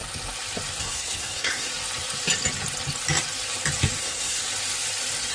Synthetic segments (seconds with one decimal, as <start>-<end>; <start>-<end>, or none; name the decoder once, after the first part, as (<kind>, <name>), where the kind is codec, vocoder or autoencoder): 0.8-1.7 (codec, SNAC); 4.0-4.4